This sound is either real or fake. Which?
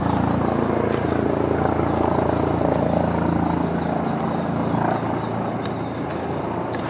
real